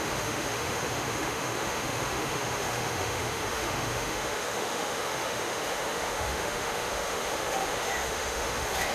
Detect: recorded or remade remade